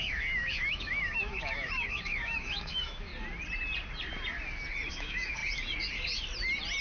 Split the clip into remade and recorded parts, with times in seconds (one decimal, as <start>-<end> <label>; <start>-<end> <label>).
0.0-3.1 remade; 3.1-4.9 recorded; 4.9-5.4 remade; 5.4-6.8 recorded